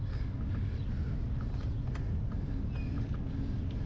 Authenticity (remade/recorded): recorded